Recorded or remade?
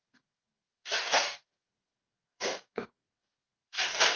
remade